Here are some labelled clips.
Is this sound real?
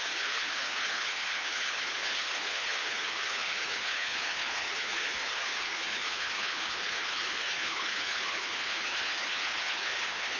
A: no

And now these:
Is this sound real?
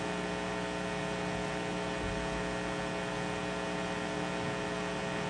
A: yes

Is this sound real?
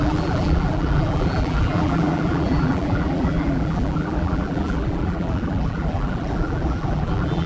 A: no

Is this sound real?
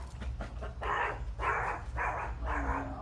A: yes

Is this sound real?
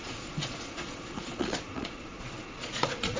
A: no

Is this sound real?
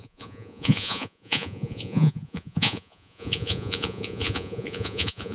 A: no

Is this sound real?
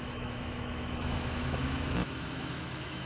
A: no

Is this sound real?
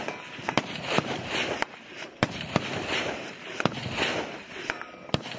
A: no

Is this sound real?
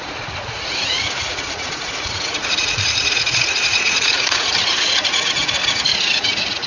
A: no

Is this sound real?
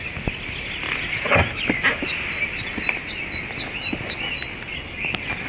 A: yes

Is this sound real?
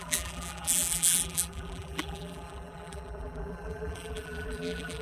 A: no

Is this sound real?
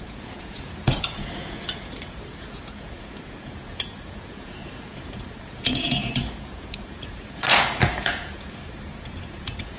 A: no